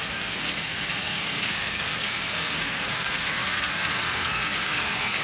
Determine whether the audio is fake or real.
fake